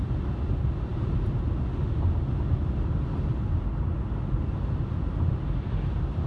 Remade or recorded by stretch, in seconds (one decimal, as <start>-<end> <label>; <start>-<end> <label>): 0.0-6.3 recorded